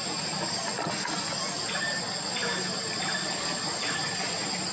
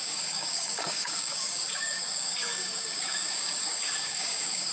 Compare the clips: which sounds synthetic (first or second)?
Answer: second